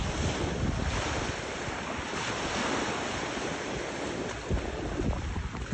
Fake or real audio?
real